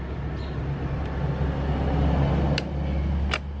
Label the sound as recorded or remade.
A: recorded